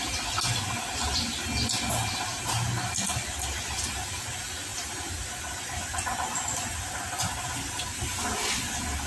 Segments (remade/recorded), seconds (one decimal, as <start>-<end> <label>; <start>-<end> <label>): 0.0-4.7 recorded; 4.7-5.3 remade; 5.3-9.1 recorded